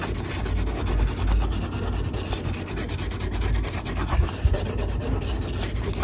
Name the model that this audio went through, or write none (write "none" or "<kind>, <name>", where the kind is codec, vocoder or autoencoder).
none